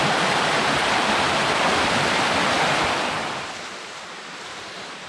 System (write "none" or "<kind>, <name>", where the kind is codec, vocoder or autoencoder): none